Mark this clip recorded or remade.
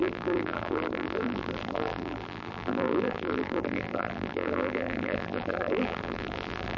remade